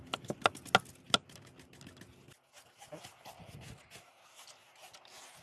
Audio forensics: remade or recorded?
recorded